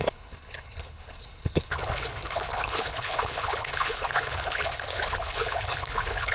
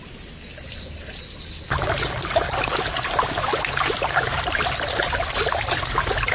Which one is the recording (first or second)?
second